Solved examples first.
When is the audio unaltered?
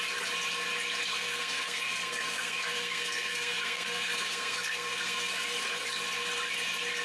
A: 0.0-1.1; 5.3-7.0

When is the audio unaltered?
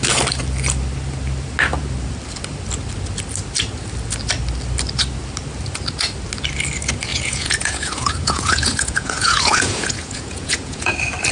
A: 0.0-7.1; 10.9-11.3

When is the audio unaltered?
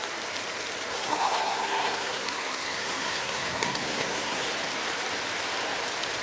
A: 0.0-0.9; 4.5-6.2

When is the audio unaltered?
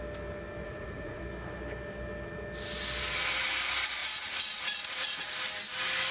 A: 0.0-0.6; 1.2-4.0; 5.3-6.1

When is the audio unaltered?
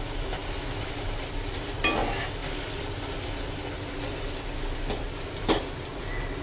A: 0.0-0.4; 0.9-6.4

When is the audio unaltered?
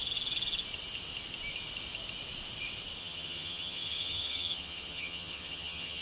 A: 0.0-3.0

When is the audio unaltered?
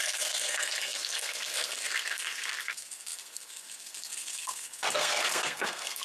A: none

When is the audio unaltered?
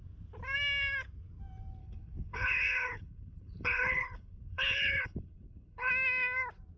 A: 0.0-1.8; 5.9-6.8